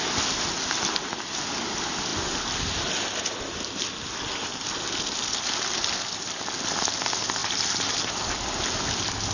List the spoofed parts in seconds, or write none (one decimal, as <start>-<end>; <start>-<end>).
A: none

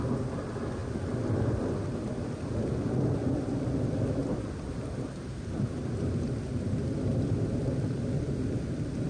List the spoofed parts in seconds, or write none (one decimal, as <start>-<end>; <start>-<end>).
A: 4.2-5.4

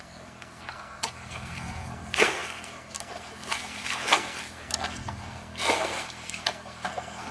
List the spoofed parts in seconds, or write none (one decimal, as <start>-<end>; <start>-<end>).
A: 0.0-7.3

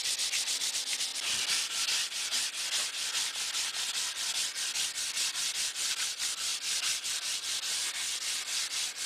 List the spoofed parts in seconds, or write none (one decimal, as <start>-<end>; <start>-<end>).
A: none

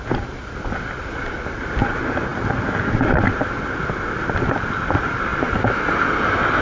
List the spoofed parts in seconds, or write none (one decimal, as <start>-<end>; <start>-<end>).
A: none

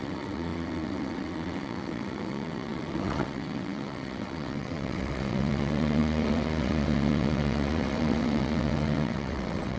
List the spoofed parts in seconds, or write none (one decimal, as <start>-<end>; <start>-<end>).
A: 0.0-9.8

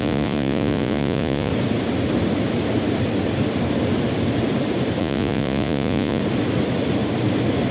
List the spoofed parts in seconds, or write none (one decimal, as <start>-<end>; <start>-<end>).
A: 0.0-1.5; 5.0-6.2

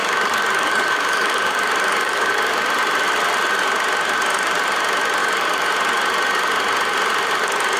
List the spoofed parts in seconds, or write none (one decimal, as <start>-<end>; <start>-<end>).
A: 0.0-2.5; 5.2-5.7